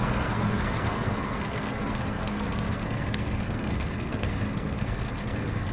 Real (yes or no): no